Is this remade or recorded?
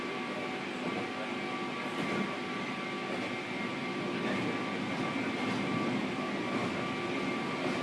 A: recorded